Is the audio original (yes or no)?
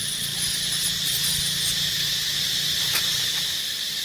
yes